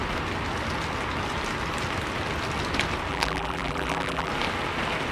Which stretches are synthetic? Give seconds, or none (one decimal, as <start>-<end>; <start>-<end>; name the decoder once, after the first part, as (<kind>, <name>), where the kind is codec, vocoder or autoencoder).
3.1-4.3 (vocoder, BigVGAN v2)